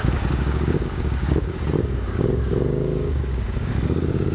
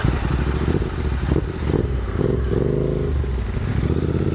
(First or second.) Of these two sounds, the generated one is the first